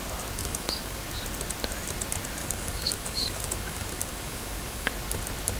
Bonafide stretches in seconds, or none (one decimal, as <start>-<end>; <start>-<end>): 0.0-0.4; 1.0-2.4; 4.9-5.6